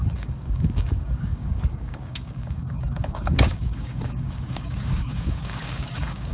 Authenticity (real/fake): fake